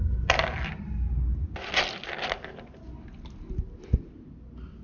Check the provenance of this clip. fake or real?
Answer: real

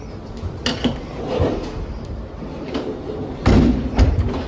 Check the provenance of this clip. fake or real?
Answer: real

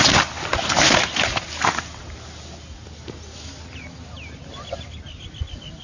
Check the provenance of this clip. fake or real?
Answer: real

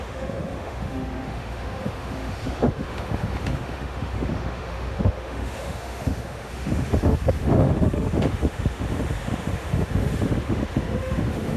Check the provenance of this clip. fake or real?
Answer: fake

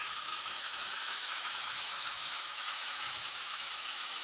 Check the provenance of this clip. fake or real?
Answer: fake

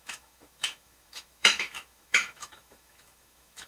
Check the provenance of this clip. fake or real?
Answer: fake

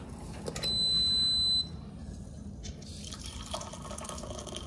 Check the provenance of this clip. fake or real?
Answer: real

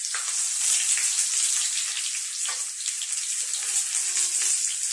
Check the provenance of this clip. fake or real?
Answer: real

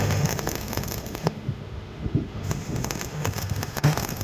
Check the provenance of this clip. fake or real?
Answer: fake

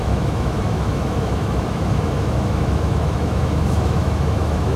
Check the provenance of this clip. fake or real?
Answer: fake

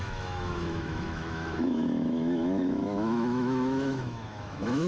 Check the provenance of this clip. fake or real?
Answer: fake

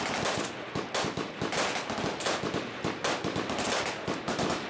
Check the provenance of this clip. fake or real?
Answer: real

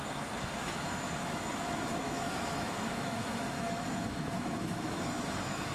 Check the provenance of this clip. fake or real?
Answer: fake